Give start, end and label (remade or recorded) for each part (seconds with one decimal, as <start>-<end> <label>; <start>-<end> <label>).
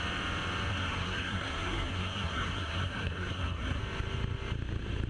0.0-0.7 recorded; 0.7-3.8 remade; 3.8-5.1 recorded